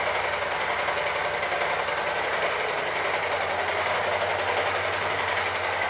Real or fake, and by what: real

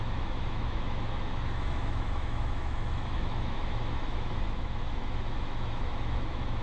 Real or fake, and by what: fake, autoencoder, DAC-VAE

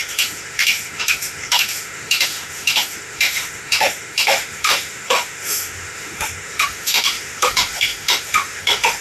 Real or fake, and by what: fake, autoencoder, DAC-VAE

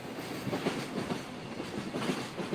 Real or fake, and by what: real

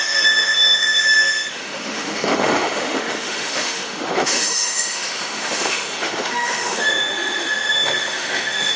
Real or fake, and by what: fake, autoencoder, DAC-VAE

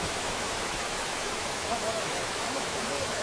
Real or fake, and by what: fake, autoencoder, DAC-VAE